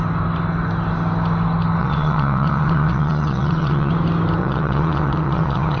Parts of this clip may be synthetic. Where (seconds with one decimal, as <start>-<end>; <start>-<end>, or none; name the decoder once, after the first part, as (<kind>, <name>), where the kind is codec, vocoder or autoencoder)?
1.8-3.9 (vocoder, WaveNeXt); 4.4-5.8